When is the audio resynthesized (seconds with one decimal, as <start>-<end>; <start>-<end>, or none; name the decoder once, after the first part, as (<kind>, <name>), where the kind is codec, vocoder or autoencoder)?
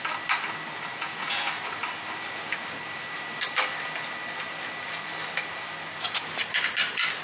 0.9-1.5 (vocoder, Vocos)